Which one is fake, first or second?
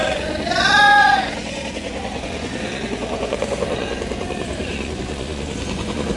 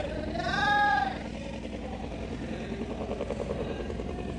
first